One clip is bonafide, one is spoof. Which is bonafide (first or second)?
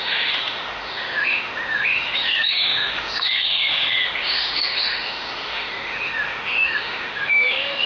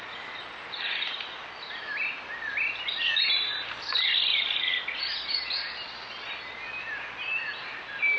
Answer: second